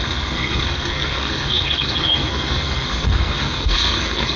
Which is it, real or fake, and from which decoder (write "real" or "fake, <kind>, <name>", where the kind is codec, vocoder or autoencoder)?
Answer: fake, codec, SNAC